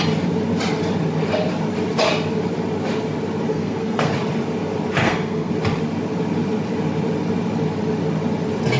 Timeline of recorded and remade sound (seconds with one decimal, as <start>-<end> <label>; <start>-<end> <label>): 0.0-3.5 recorded; 3.5-4.1 remade; 4.1-5.0 recorded; 5.0-5.5 remade; 5.5-8.8 recorded